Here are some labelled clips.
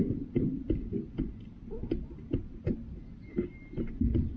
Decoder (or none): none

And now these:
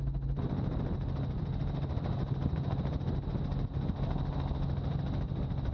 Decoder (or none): none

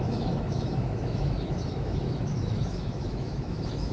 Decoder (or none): autoencoder, DAC-VAE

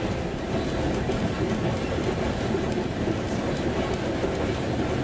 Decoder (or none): none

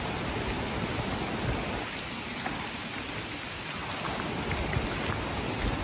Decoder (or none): none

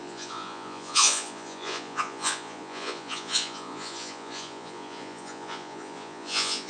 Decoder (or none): vocoder, Vocos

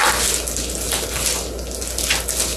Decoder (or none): none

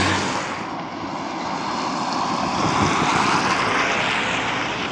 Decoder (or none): none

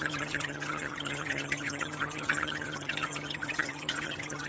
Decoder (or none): vocoder, HiFi-GAN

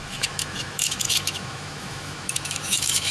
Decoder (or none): autoencoder, DAC-VAE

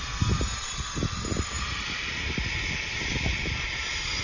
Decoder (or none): none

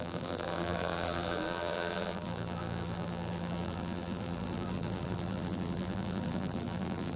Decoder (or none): vocoder, BigVGAN v2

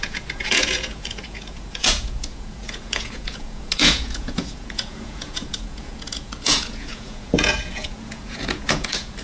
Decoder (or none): vocoder, Vocos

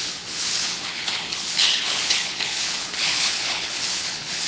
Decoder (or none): codec, HILCodec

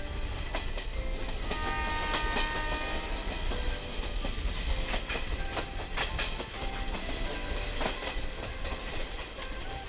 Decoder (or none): none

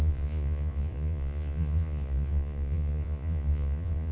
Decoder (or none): vocoder, Vocos